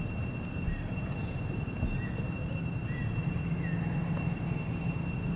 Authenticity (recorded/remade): recorded